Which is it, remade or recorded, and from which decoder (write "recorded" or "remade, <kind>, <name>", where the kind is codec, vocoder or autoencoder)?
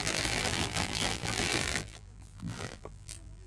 remade, vocoder, BigVGAN v2